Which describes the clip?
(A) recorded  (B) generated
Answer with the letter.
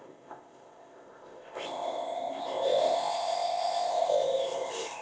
B